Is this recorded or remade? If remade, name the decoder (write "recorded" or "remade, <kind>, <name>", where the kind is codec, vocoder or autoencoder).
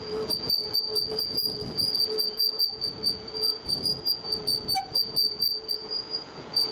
remade, vocoder, Vocos